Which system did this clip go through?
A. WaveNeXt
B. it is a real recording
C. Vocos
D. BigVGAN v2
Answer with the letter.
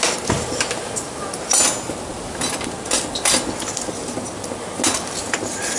B